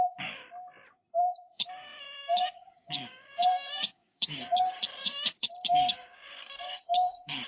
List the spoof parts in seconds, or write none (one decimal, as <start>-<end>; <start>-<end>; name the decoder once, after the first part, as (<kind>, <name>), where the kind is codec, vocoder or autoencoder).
0.0-0.4 (codec, DAC); 1.3-7.5